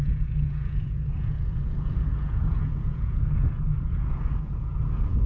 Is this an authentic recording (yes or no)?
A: no